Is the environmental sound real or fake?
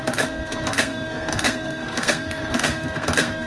fake